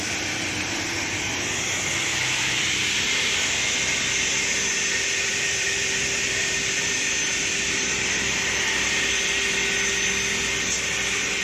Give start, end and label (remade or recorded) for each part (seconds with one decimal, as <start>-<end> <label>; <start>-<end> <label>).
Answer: 0.0-5.3 recorded; 5.3-8.6 remade; 8.6-11.4 recorded